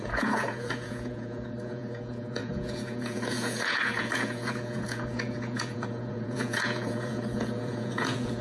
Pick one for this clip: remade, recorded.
remade